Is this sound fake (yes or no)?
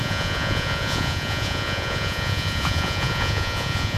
yes